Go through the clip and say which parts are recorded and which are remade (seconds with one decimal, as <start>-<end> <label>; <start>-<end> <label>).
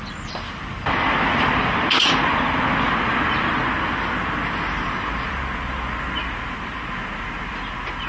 0.0-8.1 recorded